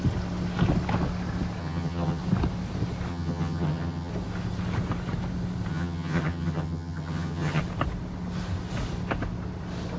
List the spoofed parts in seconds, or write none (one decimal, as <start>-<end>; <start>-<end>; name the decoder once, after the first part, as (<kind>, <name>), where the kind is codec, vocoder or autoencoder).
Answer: 1.6-2.2 (vocoder, HiFi-GAN); 3.1-4.1; 5.7-7.6